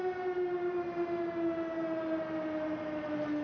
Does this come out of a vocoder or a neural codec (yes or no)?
no